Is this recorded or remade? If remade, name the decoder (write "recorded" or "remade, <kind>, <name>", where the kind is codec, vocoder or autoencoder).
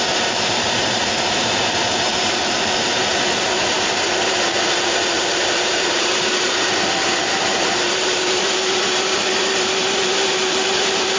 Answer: remade, vocoder, BigVGAN v2